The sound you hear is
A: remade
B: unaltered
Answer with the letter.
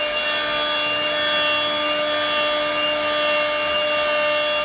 B